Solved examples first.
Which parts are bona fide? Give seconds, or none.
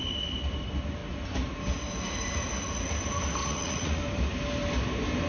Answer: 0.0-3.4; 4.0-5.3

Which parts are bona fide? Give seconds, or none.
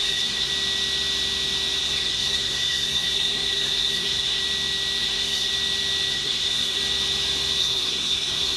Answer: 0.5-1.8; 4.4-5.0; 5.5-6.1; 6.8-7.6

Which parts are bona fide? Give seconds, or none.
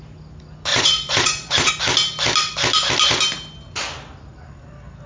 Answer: 0.0-0.7; 1.7-5.1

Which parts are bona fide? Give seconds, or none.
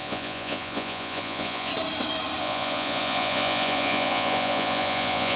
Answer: 1.7-2.4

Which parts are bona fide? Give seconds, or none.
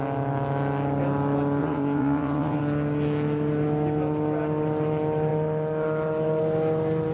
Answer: 0.0-1.6; 2.6-7.1